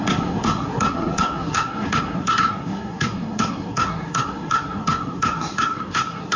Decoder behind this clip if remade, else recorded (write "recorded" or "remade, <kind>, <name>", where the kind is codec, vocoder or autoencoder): remade, codec, SNAC